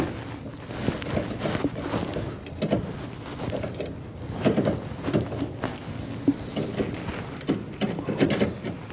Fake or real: real